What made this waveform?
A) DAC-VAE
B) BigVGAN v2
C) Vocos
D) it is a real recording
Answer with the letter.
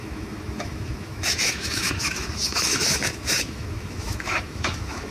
A